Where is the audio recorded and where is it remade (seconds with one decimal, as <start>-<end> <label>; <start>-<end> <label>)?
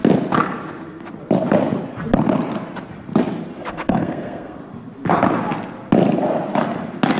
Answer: 0.0-3.7 recorded; 3.7-4.6 remade; 4.6-7.2 recorded